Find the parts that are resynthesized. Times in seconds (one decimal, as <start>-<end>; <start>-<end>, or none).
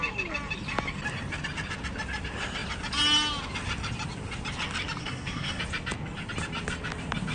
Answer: 5.0-5.6